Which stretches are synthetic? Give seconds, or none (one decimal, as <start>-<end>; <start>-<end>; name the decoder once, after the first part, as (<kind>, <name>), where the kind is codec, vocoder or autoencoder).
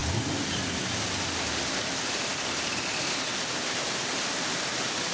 none